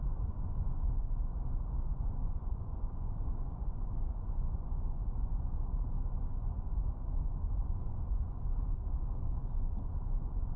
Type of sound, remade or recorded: remade